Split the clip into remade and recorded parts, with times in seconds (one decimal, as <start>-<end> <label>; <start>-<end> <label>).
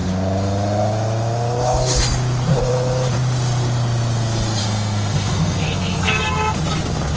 0.0-4.6 recorded; 4.6-6.2 remade; 6.2-7.2 recorded